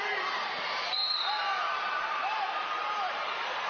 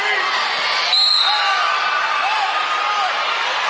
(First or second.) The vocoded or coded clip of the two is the first